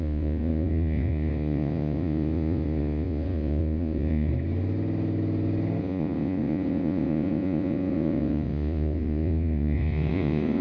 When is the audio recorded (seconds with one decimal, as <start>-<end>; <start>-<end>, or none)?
4.3-5.8